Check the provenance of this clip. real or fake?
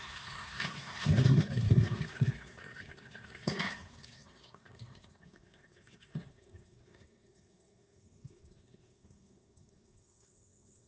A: fake